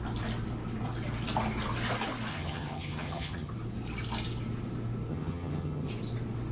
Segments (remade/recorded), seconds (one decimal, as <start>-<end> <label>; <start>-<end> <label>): 0.0-2.3 recorded; 2.3-3.5 remade; 3.5-5.1 recorded; 5.1-5.9 remade; 5.9-6.5 recorded